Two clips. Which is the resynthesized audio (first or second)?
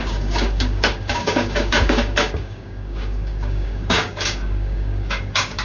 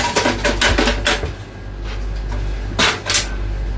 first